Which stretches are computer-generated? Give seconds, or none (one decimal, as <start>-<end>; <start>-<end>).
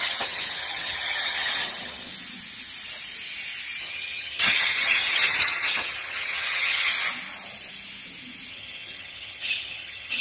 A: 0.0-2.1; 3.8-6.9; 8.5-10.2